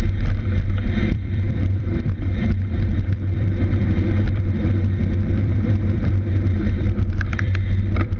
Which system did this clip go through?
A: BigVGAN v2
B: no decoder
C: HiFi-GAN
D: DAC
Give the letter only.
A